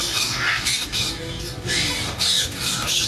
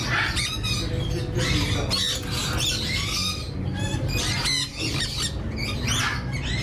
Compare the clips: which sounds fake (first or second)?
first